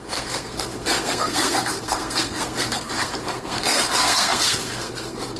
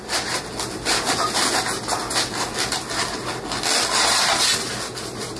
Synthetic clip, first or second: first